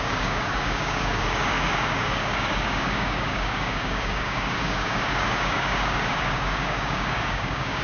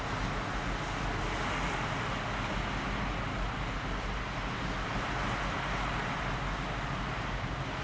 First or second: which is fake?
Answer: first